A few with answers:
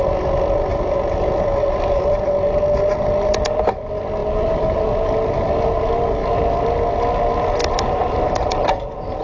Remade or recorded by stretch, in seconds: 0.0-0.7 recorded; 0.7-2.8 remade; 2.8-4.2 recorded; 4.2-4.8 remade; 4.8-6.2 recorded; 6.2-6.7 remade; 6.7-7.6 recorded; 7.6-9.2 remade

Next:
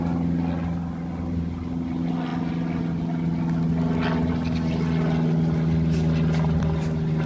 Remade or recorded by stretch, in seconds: 0.0-7.3 recorded